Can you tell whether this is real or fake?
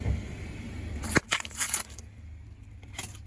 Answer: real